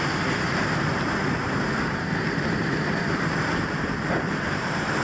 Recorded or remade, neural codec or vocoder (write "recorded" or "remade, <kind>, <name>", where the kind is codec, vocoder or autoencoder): remade, vocoder, BigVGAN v2